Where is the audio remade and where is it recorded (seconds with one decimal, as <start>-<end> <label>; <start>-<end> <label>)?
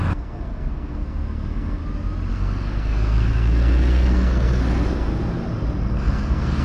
0.0-1.8 remade; 1.8-2.3 recorded; 2.3-5.1 remade; 5.1-5.8 recorded; 5.8-6.6 remade